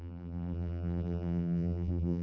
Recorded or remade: remade